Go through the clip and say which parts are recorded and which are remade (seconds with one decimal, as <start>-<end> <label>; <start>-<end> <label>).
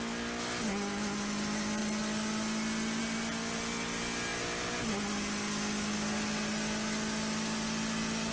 0.0-8.3 recorded